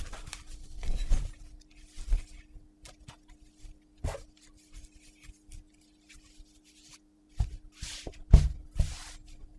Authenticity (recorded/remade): recorded